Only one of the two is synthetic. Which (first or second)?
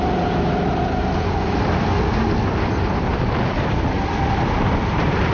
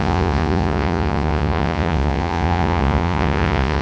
second